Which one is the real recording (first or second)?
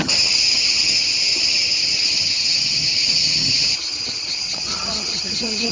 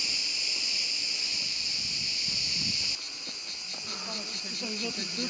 second